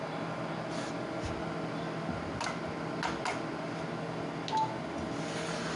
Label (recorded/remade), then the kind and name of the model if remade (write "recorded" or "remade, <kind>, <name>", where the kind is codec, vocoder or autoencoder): recorded